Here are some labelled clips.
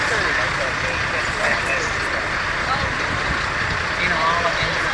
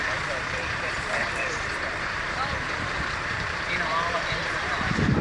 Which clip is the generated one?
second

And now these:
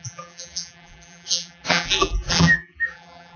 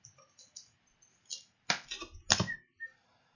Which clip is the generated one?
first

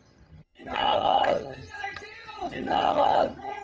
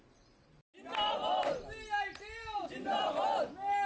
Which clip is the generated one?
first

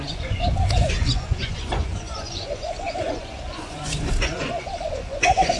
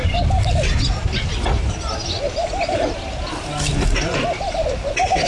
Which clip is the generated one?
first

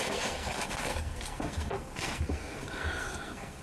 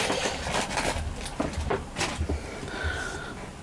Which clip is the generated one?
first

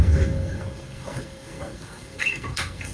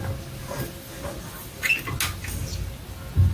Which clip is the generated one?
first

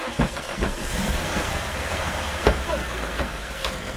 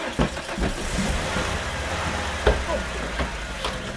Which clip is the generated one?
first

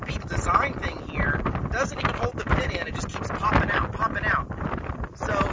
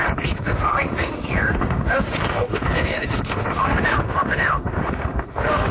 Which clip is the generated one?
second